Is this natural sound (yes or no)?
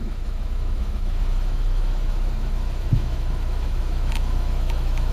no